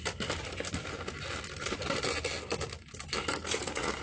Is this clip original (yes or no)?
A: yes